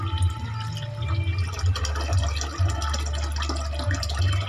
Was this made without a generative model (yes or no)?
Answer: yes